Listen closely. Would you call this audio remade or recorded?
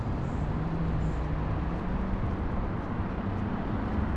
recorded